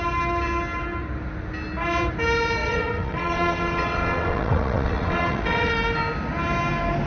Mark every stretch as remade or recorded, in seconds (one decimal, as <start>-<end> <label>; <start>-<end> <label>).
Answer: 0.0-2.6 recorded; 2.6-5.7 remade; 5.7-7.1 recorded